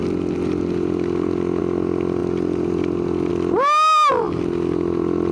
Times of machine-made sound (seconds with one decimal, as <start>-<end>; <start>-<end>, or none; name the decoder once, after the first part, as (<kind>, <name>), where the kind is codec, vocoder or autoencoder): none